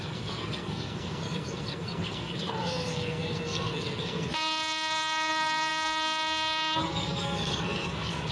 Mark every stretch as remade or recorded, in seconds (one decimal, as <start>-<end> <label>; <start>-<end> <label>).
0.0-8.3 remade